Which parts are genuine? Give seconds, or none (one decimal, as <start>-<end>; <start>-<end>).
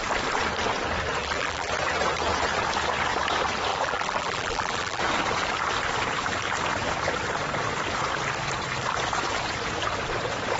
0.0-1.2; 1.7-3.7; 5.0-10.6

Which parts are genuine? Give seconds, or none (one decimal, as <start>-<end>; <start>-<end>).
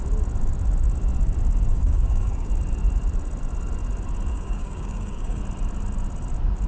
0.0-1.7; 2.5-4.3; 5.4-6.7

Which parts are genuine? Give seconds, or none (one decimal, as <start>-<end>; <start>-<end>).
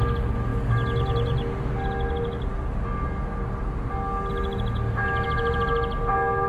0.0-6.5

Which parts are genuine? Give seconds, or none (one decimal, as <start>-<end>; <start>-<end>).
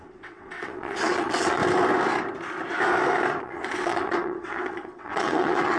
1.6-3.4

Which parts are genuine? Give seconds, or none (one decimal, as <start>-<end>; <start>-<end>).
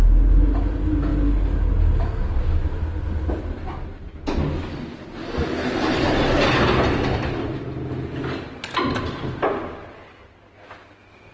0.0-11.3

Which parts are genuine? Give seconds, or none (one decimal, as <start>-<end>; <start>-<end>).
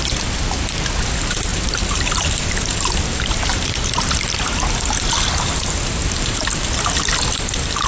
0.0-1.5; 4.3-7.9